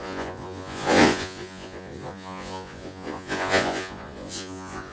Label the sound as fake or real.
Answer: fake